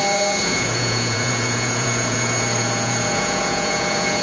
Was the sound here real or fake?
fake